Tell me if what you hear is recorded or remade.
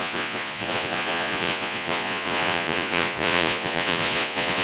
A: remade